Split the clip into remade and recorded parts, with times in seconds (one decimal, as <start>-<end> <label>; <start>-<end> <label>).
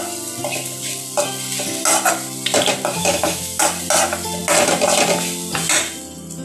0.0-3.0 recorded; 3.0-3.6 remade; 3.6-6.4 recorded